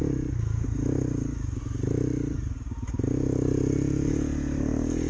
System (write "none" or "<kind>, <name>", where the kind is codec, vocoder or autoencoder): none